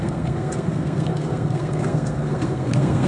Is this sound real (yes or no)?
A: no